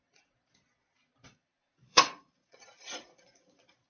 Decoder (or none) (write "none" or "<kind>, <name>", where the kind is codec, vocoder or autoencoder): vocoder, Vocos